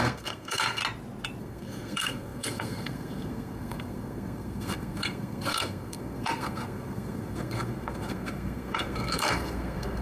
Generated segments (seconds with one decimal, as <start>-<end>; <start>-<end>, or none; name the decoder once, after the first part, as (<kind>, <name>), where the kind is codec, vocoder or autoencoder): 0.0-0.8 (codec, SNAC); 1.4-10.0